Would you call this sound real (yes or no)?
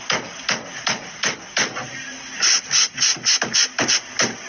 yes